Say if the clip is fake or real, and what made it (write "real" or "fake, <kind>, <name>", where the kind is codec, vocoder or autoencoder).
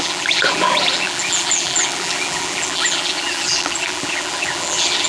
fake, vocoder, BigVGAN v2